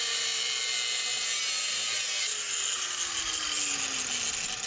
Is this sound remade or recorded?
recorded